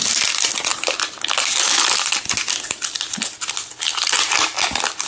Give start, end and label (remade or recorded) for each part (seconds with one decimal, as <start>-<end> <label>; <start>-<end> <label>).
0.0-5.1 recorded